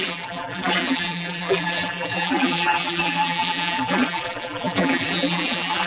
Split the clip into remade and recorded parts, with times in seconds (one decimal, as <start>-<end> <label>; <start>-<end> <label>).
0.0-5.9 remade